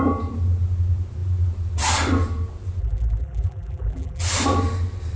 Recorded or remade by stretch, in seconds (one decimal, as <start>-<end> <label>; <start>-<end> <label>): 0.0-2.8 recorded; 2.8-4.2 remade; 4.2-5.2 recorded